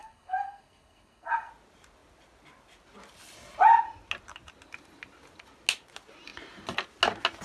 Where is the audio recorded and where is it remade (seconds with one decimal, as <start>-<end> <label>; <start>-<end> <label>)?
0.0-1.5 remade; 1.5-7.4 recorded